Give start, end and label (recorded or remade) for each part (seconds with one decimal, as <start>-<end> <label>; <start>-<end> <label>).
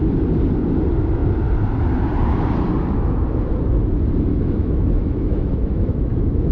0.0-4.3 recorded; 4.3-6.5 remade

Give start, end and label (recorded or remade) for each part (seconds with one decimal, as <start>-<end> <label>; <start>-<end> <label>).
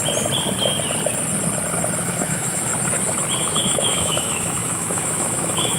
0.0-2.0 recorded; 2.0-2.7 remade; 2.7-3.4 recorded; 3.4-5.8 remade